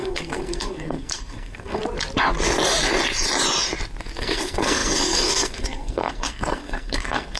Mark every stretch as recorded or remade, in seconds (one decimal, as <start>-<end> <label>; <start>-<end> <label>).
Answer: 0.0-1.8 remade; 1.8-4.0 recorded; 4.0-7.4 remade